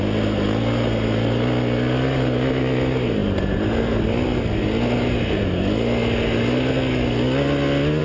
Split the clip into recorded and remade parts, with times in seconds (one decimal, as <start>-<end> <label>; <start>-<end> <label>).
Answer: 0.0-8.0 recorded